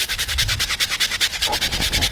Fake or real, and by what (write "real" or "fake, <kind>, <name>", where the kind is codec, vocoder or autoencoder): real